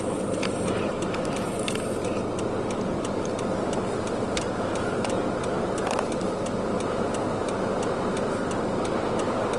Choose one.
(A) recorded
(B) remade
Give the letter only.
A